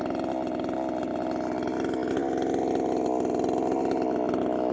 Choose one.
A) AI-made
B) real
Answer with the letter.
B